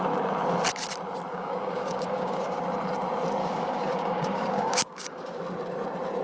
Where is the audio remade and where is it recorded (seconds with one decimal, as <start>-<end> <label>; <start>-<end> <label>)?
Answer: 0.0-1.3 recorded; 1.3-2.6 remade; 2.6-3.4 recorded; 3.4-5.4 remade; 5.4-6.2 recorded